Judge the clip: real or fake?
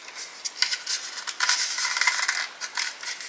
real